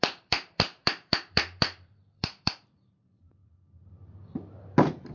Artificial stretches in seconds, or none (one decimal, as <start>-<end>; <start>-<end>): 0.0-3.4